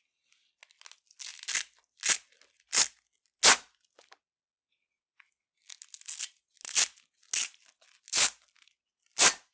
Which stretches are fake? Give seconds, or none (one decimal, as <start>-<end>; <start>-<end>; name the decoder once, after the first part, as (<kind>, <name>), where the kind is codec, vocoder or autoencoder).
none